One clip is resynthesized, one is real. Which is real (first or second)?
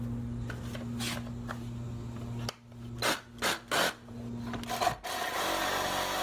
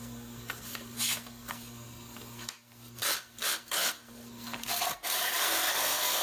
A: first